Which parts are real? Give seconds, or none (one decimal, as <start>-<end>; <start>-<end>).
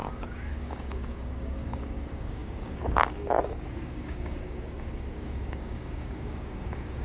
none